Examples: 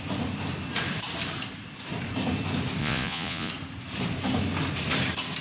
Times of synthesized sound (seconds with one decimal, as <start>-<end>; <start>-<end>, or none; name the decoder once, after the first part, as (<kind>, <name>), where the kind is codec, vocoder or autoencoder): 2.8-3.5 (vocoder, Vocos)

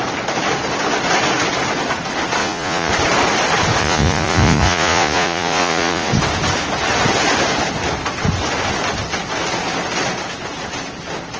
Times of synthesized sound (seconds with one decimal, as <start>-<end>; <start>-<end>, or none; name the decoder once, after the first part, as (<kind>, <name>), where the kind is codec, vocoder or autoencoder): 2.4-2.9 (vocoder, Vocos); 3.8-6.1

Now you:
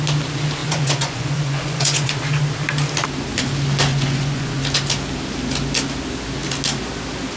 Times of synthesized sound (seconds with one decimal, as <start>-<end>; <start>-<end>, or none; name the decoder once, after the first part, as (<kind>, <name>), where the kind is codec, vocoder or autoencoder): 0.6-2.1 (vocoder, Vocos); 3.9-4.6

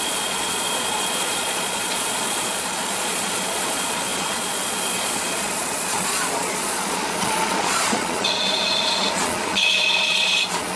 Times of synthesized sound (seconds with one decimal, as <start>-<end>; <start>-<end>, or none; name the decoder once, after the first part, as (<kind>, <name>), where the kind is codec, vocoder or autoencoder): 0.0-10.8 (vocoder, Vocos)